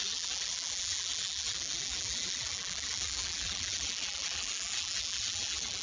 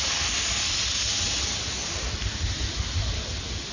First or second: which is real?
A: second